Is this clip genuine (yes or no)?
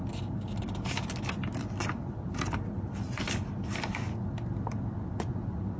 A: yes